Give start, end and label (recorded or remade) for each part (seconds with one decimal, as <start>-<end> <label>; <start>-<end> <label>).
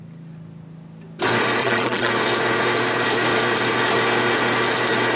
0.0-1.6 recorded; 1.6-2.1 remade; 2.1-5.2 recorded